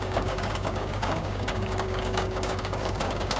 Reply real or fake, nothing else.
fake